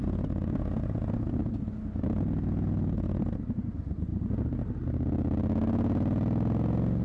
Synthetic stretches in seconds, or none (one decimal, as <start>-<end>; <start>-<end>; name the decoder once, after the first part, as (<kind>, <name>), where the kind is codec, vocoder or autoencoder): none